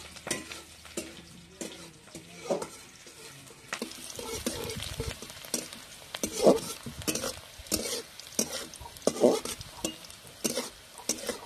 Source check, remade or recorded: recorded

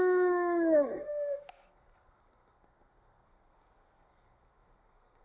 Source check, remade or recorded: remade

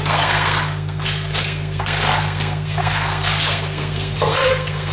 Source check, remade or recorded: remade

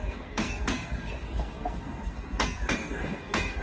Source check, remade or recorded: remade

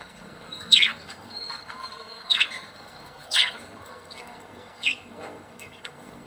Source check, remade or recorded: remade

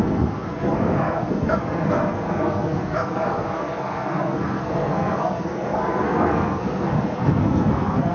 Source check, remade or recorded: remade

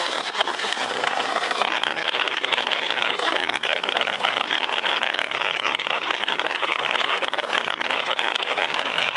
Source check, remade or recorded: remade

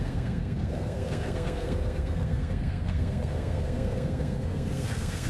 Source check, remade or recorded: remade